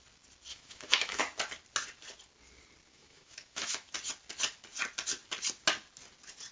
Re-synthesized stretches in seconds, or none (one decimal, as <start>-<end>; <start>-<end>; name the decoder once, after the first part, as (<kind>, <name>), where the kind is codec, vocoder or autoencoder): 0.5-1.2 (autoencoder, DAC-VAE); 2.9-3.9